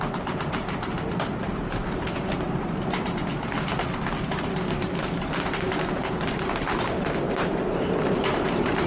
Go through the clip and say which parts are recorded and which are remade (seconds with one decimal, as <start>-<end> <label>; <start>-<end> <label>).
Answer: 0.0-3.3 remade; 3.3-8.0 recorded; 8.0-8.9 remade